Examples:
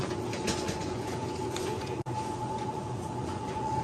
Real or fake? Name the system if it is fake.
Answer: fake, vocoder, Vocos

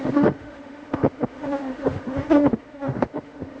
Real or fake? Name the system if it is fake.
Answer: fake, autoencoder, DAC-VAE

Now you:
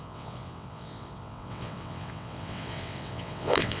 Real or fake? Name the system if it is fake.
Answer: fake, vocoder, WaveNeXt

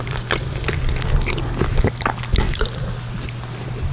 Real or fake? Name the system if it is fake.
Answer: real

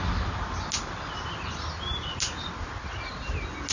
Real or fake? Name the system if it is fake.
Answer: real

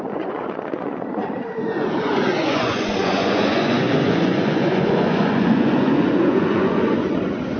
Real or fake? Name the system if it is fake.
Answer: fake, vocoder, Vocos